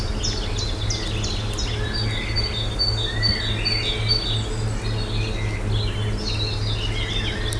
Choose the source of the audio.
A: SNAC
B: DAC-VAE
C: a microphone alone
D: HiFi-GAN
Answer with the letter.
C